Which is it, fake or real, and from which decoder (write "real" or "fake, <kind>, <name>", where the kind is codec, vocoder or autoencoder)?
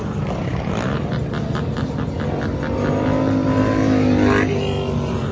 real